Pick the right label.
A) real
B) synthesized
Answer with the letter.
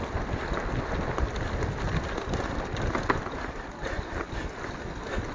A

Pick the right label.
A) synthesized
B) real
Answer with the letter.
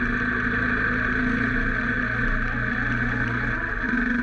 B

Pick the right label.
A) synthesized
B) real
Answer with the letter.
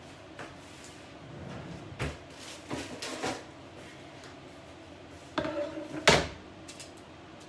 B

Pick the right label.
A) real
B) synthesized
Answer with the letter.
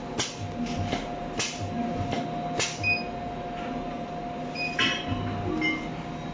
A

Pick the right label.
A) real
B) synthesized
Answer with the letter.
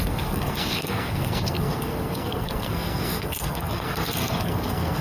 B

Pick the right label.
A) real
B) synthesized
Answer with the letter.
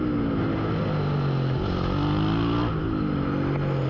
A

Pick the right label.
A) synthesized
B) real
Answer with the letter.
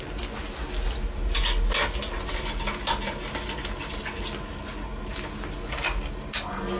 B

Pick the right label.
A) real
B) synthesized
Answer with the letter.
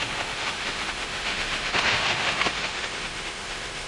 B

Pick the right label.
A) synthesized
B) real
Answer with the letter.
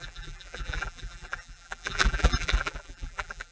A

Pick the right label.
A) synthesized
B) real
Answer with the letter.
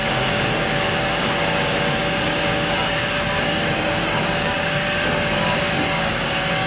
A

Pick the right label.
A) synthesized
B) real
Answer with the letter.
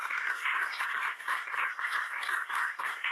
A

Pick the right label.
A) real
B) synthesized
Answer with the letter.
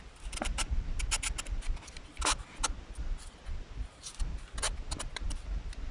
A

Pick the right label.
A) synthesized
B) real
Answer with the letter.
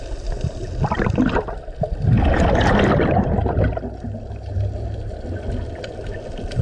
B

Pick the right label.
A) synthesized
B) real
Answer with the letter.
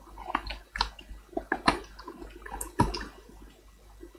B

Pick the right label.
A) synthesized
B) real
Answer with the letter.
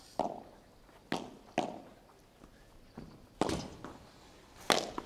B